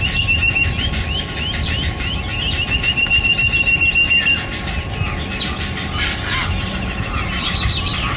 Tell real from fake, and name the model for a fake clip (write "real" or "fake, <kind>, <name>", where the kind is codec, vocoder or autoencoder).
real